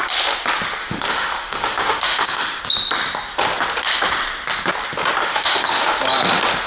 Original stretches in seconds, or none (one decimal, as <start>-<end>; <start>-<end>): 0.0-0.8; 2.6-5.2; 5.9-6.7